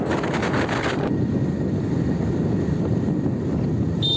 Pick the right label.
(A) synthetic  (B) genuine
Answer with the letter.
B